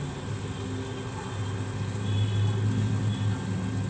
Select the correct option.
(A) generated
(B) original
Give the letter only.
B